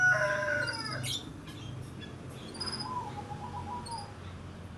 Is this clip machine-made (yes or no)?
no